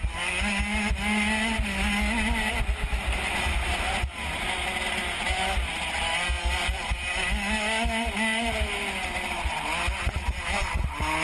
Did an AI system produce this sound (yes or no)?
no